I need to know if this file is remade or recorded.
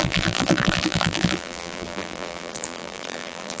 remade